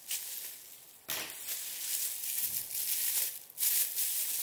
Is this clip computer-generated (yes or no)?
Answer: no